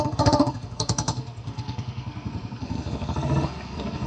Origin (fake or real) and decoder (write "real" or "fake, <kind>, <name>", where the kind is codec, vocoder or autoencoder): fake, codec, SNAC